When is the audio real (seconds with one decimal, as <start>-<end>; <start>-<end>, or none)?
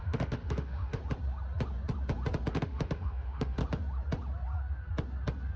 1.0-2.5; 3.6-5.6